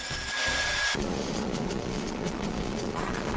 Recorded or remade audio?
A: remade